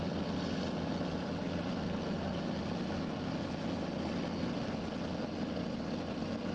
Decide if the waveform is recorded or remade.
recorded